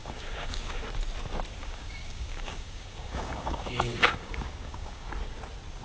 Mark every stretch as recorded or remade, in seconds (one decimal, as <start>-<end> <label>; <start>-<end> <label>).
0.0-0.8 remade; 0.8-1.6 recorded; 1.6-5.1 remade; 5.1-5.8 recorded